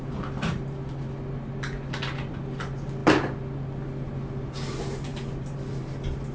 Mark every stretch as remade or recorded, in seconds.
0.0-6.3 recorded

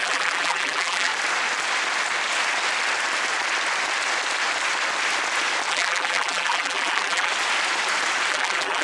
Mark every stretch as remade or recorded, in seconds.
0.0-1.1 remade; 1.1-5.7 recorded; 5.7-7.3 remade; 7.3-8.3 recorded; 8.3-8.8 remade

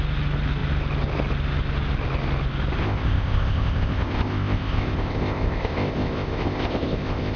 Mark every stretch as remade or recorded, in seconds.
0.0-2.8 recorded; 2.8-7.4 remade

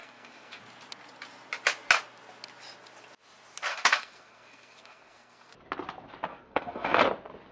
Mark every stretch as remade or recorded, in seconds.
0.0-0.6 remade; 0.6-3.7 recorded; 3.7-5.5 remade; 5.5-6.3 recorded; 6.3-7.0 remade; 7.0-7.5 recorded